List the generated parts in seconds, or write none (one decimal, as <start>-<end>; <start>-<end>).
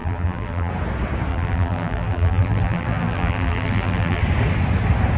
0.0-0.7; 1.3-4.2